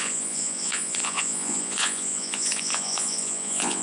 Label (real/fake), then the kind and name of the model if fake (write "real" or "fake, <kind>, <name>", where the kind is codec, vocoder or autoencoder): fake, vocoder, Vocos